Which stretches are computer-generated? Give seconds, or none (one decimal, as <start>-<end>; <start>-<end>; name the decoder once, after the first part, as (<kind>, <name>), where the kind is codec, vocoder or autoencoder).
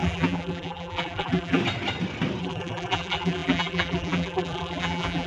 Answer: 0.0-1.6 (vocoder, BigVGAN v2); 2.4-5.3